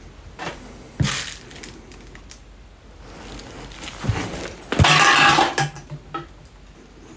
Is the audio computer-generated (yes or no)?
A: no